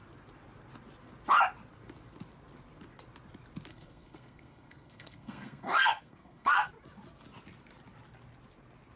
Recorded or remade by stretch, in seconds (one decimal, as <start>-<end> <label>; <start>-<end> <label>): 0.0-3.7 recorded; 3.7-6.7 remade; 6.7-9.0 recorded